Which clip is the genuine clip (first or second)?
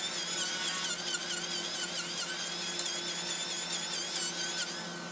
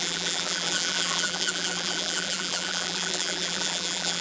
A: first